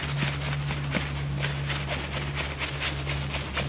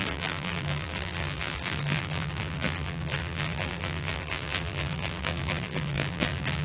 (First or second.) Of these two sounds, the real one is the first